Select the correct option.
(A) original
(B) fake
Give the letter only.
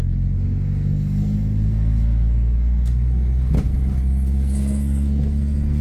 B